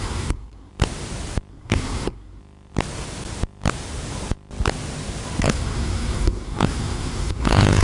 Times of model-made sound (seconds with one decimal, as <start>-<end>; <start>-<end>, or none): 0.0-0.7; 1.5-2.4; 5.4-7.8